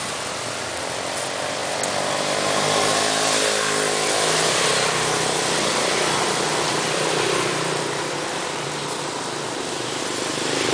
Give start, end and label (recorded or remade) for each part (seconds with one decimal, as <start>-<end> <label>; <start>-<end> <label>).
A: 0.0-8.8 remade; 8.8-10.0 recorded; 10.0-10.7 remade